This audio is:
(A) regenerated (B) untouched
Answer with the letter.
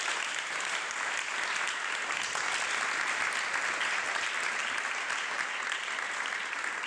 B